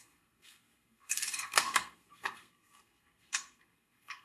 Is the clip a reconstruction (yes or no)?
yes